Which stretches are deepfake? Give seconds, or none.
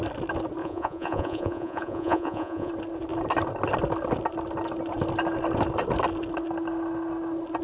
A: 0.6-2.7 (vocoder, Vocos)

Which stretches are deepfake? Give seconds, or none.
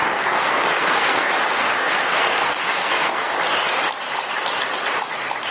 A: 0.0-3.3 (codec, SNAC)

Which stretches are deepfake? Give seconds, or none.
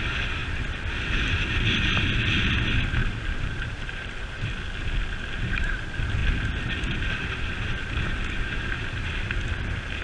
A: 3.0-4.5 (vocoder, BigVGAN v2)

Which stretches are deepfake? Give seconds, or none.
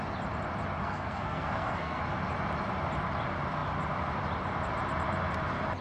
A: 0.8-2.0 (codec, SNAC)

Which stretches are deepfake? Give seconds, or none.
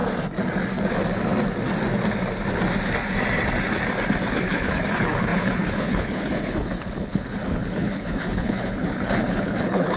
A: 4.3-10.0 (codec, HILCodec)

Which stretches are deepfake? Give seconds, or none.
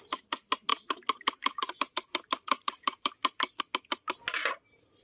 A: 0.7-3.6 (vocoder, BigVGAN v2)